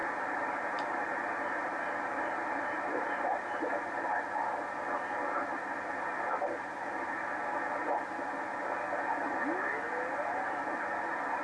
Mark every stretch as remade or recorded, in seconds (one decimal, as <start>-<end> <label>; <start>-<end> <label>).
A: 0.0-4.1 remade; 4.1-11.4 recorded